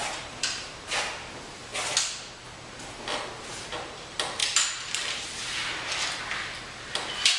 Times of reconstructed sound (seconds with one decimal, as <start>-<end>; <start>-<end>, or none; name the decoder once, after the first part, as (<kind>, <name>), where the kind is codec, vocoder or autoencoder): 0.0-1.7 (vocoder, BigVGAN v2); 3.5-4.4; 5.1-5.6; 6.8-7.4